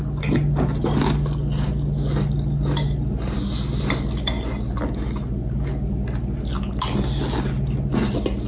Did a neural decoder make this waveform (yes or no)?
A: no